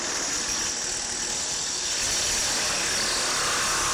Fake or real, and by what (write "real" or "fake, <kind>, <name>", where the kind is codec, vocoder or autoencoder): real